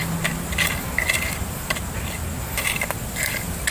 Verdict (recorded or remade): recorded